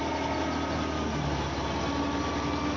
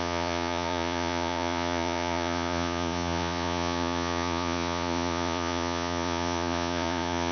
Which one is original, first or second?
first